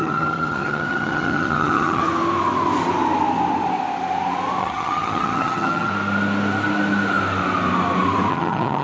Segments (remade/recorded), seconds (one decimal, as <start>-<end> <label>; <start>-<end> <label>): 0.0-2.0 remade; 2.0-4.6 recorded; 4.6-5.9 remade; 5.9-8.3 recorded; 8.3-8.8 remade